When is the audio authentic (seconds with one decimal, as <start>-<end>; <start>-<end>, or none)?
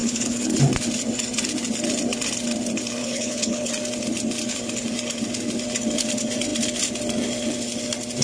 0.6-3.0; 3.7-8.2